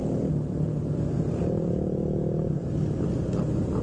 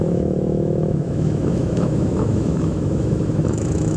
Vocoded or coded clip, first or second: second